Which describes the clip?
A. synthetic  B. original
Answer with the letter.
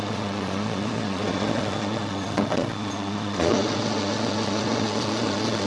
A